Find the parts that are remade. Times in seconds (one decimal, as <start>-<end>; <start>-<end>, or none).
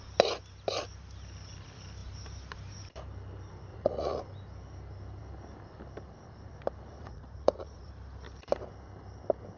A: 3.7-4.2; 6.9-7.9